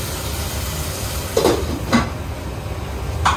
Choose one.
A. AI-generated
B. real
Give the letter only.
B